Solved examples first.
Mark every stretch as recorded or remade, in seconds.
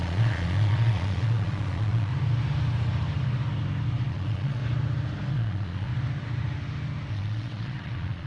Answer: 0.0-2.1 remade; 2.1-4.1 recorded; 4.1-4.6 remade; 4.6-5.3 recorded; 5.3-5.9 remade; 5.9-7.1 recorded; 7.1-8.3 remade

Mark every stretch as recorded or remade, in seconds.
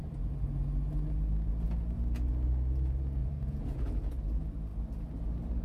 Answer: 0.0-3.2 recorded; 3.2-4.1 remade; 4.1-5.6 recorded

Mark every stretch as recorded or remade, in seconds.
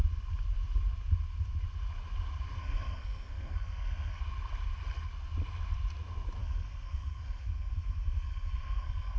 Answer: 0.0-2.6 recorded; 2.6-4.2 remade; 4.2-6.4 recorded; 6.4-9.2 remade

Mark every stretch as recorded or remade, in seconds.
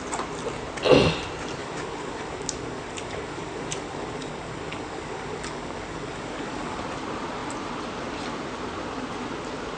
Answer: 0.0-1.6 recorded; 1.6-6.8 remade; 6.8-9.8 recorded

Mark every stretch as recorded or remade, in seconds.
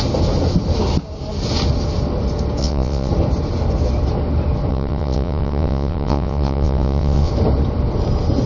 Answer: 0.0-2.6 recorded; 2.6-3.1 remade; 3.1-4.7 recorded; 4.7-7.3 remade; 7.3-8.5 recorded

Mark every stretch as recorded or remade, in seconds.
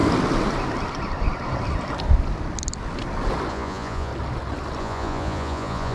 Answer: 0.0-3.5 recorded; 3.5-4.1 remade; 4.1-4.8 recorded; 4.8-5.9 remade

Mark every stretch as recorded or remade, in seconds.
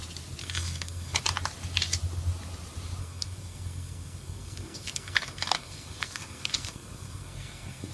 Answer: 0.0-0.4 recorded; 0.4-1.2 remade; 1.2-3.0 recorded; 3.0-7.9 remade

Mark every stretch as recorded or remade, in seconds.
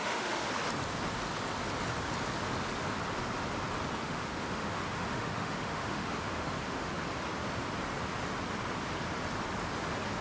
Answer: 0.0-0.5 remade; 0.5-4.0 recorded; 4.0-6.9 remade; 6.9-10.2 recorded